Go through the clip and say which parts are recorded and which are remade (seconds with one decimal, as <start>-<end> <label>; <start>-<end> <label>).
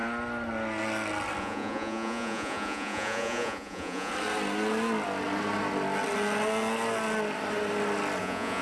0.0-1.4 recorded; 1.4-4.1 remade; 4.1-8.2 recorded; 8.2-8.6 remade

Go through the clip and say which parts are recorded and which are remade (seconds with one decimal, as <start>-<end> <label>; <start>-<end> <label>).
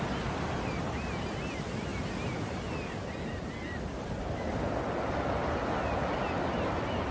0.0-7.1 recorded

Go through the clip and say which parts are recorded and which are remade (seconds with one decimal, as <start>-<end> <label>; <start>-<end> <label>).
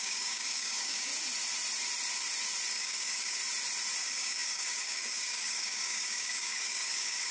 0.0-1.1 remade; 1.1-2.7 recorded; 2.7-3.4 remade; 3.4-4.0 recorded; 4.0-7.3 remade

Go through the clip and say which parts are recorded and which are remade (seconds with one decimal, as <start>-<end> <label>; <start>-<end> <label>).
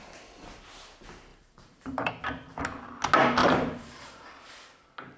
0.0-1.3 recorded; 1.3-2.1 remade; 2.1-3.4 recorded; 3.4-4.3 remade; 4.3-5.2 recorded